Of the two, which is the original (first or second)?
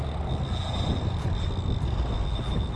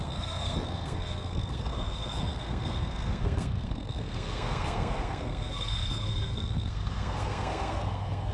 first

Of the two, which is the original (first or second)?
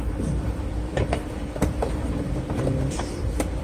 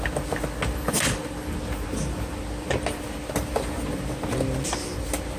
second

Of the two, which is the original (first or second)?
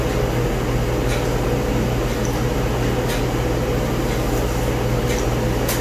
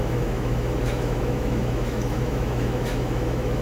first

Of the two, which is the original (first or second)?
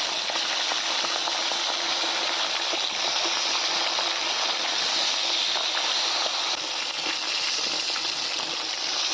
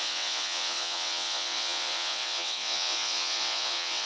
first